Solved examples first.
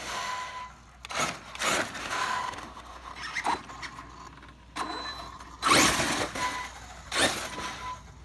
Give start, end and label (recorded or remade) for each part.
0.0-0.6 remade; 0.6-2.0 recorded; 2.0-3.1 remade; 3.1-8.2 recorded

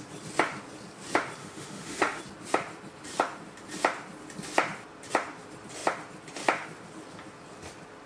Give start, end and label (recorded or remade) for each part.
0.0-1.4 recorded; 1.4-2.2 remade; 2.2-8.1 recorded

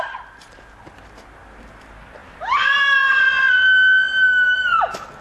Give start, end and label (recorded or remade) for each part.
0.0-5.2 recorded

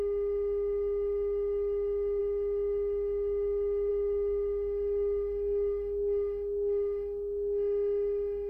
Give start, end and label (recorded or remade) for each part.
0.0-8.5 remade

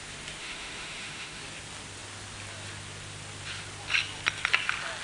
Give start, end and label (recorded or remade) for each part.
0.0-0.4 recorded; 0.4-1.4 remade; 1.4-5.0 recorded

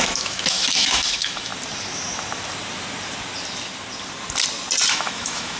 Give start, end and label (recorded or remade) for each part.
0.0-1.5 remade; 1.5-4.9 recorded; 4.9-5.6 remade